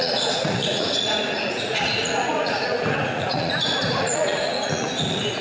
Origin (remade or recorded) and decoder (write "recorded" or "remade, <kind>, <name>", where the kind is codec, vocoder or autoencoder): remade, vocoder, Vocos